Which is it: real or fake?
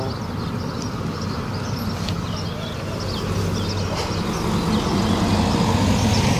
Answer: real